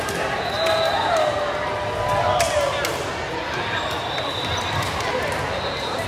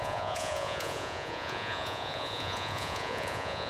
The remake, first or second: second